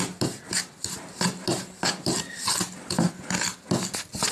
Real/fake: real